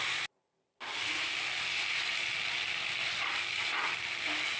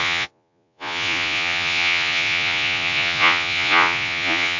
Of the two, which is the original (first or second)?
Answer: first